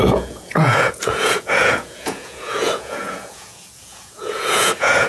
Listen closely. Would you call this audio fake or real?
fake